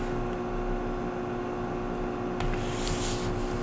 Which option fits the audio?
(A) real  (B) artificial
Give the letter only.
A